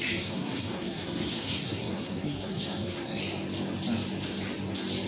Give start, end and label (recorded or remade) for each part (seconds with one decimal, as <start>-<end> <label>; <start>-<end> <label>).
0.0-3.2 remade; 3.2-5.1 recorded